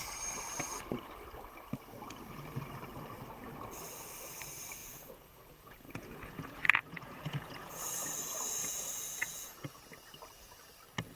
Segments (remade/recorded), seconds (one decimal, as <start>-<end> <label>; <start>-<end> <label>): 0.0-4.8 recorded; 4.8-7.8 remade; 7.8-8.6 recorded; 8.6-9.8 remade; 9.8-11.2 recorded